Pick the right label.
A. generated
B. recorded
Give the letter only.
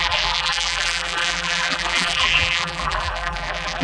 A